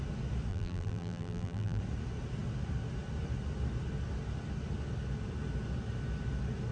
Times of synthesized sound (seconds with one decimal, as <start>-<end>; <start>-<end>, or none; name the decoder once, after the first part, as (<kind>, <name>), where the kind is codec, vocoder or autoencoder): 0.5-1.8 (vocoder, BigVGAN v2)